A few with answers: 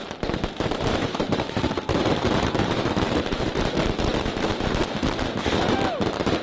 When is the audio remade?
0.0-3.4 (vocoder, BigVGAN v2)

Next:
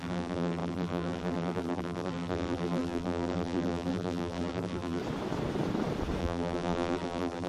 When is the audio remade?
0.0-5.0 (vocoder, BigVGAN v2); 6.2-7.5